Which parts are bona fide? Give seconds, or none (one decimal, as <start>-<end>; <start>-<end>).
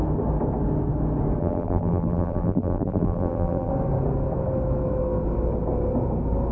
0.0-1.4; 3.7-6.5